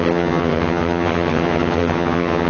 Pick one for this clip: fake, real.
fake